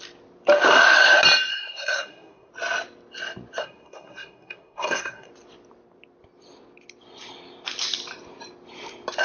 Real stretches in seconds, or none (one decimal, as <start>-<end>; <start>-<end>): 0.0-1.5; 2.5-3.6; 5.3-9.2